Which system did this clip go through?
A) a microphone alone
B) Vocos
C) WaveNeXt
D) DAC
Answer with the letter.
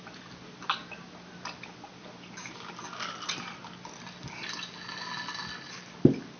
A